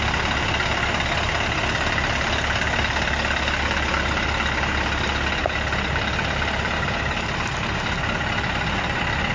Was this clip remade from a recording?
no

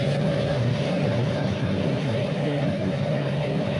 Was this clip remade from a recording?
yes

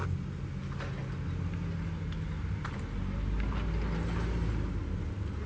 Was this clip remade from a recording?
no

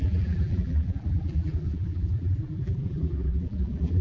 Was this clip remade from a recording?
yes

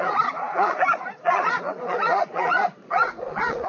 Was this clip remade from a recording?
yes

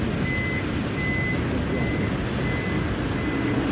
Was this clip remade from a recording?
no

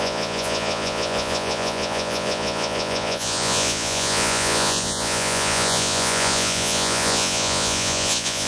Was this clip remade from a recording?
yes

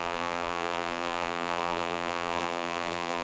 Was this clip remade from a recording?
yes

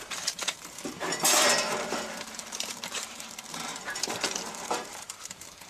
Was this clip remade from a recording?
yes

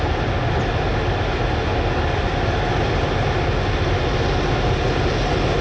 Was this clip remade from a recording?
no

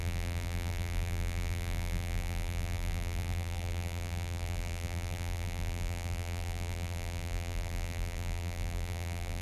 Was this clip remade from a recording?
yes